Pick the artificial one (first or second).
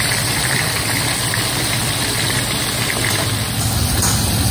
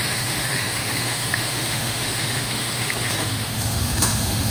second